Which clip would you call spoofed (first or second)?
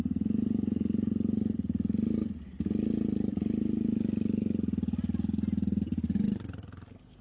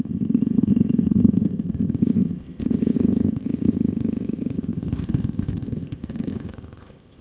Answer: second